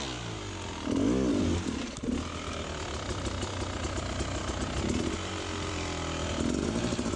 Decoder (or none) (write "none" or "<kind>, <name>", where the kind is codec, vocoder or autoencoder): none